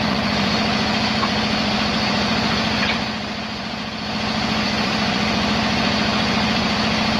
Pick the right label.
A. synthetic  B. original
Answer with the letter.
A